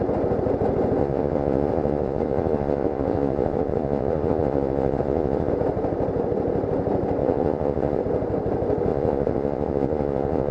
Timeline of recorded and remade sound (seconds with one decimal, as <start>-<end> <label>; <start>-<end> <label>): 0.0-1.0 recorded; 1.0-5.5 remade; 5.5-7.2 recorded; 7.2-8.0 remade; 8.0-8.9 recorded; 8.9-10.5 remade